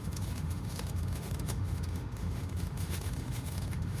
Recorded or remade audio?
remade